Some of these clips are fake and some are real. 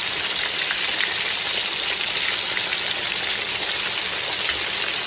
real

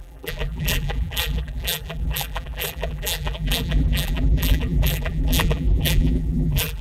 fake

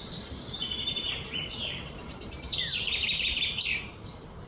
fake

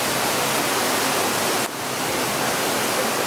real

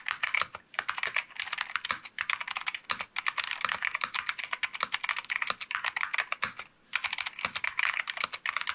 real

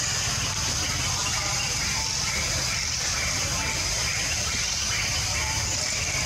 real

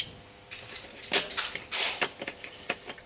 fake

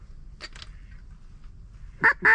real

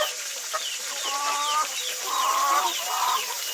real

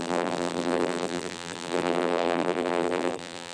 fake